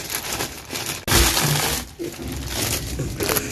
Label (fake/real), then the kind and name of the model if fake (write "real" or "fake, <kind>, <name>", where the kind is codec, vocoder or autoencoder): real